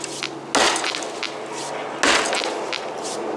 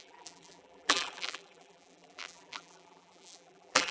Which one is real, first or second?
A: first